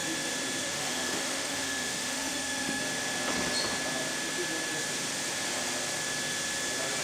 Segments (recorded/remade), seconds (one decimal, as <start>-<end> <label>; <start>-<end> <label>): 0.0-0.6 recorded; 0.6-2.8 remade; 2.8-7.0 recorded